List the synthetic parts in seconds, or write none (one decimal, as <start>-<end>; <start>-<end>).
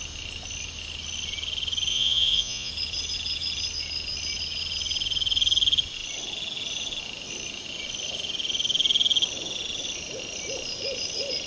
1.9-2.7